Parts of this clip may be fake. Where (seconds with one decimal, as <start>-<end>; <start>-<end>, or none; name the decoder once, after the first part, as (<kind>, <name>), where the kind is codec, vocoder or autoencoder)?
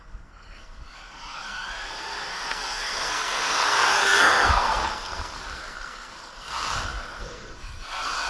0.0-8.3 (codec, SNAC)